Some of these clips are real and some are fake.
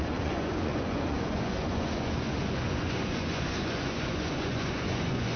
fake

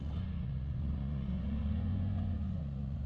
fake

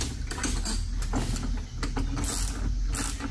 real